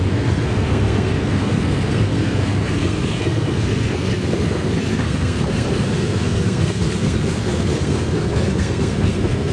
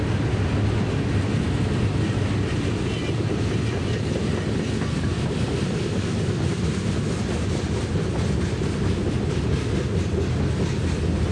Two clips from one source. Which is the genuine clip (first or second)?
second